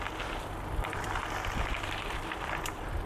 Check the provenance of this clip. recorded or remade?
recorded